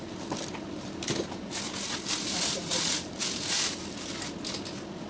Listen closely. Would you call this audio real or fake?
real